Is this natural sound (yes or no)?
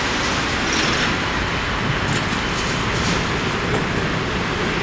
yes